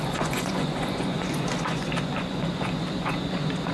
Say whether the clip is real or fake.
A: fake